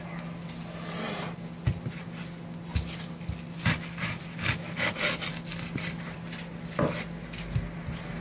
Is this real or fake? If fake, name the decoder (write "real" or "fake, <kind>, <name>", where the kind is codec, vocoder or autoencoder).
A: real